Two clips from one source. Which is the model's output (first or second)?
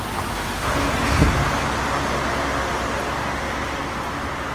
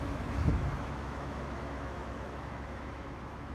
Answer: second